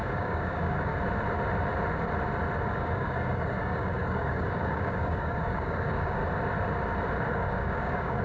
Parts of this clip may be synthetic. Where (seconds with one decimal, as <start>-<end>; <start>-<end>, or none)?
0.0-0.9; 2.7-6.2; 7.3-8.2